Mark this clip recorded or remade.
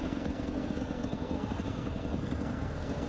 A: remade